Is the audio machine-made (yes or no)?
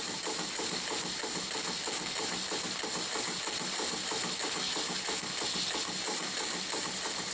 no